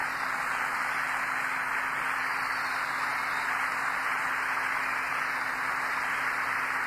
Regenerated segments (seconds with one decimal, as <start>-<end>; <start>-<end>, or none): none